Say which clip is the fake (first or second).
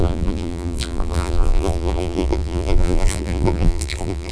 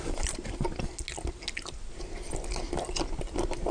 first